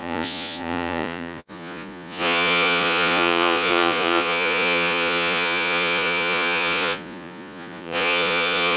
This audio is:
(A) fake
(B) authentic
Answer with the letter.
A